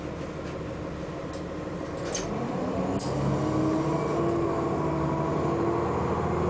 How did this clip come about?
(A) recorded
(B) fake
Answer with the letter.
A